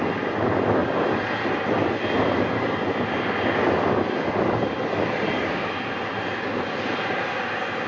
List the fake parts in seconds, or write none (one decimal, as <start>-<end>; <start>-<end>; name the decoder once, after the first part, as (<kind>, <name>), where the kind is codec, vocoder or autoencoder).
none